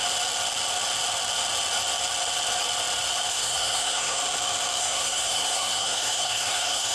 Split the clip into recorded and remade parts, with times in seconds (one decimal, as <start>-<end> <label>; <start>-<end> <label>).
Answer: 0.0-3.3 recorded; 3.3-4.2 remade; 4.2-4.8 recorded; 4.8-6.9 remade